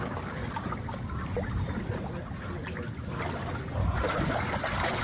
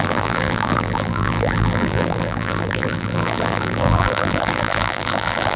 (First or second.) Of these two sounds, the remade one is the second